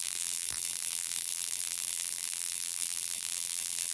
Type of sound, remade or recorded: remade